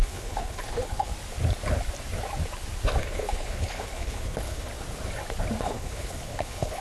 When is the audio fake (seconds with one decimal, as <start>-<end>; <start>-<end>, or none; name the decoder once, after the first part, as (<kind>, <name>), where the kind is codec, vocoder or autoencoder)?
0.0-1.1 (codec, HILCodec); 3.0-4.7; 5.6-6.8